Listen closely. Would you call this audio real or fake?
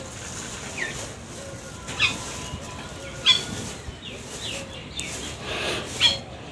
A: real